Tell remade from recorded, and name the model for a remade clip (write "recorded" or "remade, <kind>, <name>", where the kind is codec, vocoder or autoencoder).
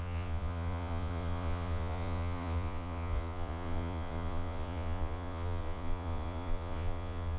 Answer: remade, vocoder, Vocos